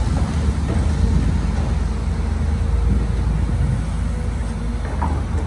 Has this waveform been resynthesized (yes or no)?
no